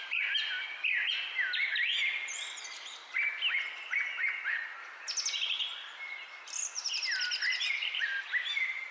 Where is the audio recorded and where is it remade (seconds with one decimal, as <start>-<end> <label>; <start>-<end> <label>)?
0.0-0.5 remade; 0.5-1.7 recorded; 1.7-3.0 remade; 3.0-7.7 recorded; 7.7-8.9 remade